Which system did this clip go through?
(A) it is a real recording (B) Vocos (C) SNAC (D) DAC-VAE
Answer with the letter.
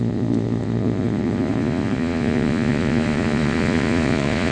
B